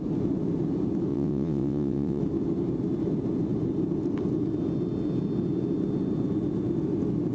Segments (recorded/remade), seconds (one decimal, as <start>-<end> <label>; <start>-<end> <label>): 0.0-1.1 recorded; 1.1-2.2 remade; 2.2-7.3 recorded